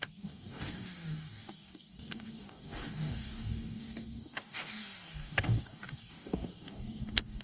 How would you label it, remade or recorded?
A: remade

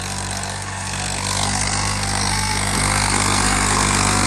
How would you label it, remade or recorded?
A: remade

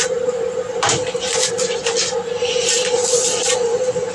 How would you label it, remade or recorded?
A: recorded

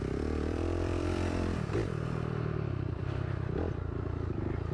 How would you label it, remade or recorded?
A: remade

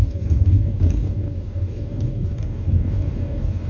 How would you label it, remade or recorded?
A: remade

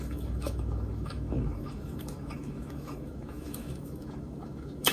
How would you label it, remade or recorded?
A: remade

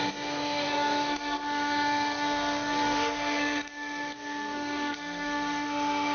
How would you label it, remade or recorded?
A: remade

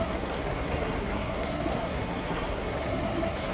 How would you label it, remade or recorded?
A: remade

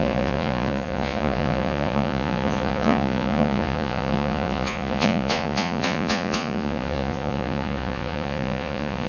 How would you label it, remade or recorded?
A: remade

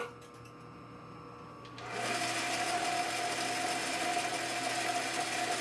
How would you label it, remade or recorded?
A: recorded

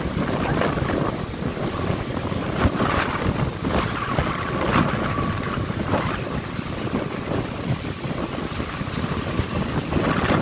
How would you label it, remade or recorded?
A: recorded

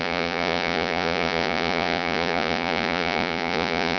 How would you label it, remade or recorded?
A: remade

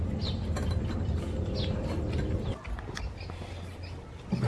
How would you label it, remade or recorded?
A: recorded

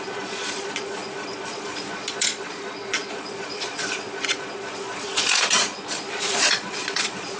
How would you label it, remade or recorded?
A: remade